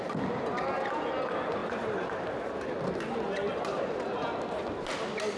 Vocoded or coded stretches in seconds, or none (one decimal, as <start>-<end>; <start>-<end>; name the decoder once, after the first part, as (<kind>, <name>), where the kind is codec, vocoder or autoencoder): none